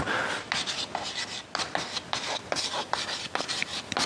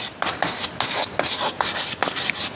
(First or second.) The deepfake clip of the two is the first